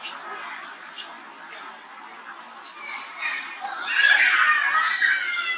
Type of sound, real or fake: real